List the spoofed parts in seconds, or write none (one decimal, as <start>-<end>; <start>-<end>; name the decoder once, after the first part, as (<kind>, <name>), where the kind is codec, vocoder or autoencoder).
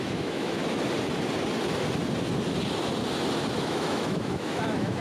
0.0-0.6 (autoencoder, DAC-VAE); 3.6-5.0